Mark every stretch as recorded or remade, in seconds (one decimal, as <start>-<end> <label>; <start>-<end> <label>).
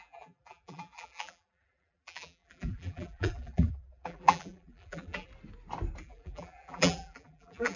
0.0-5.3 remade; 5.3-6.0 recorded; 6.0-7.8 remade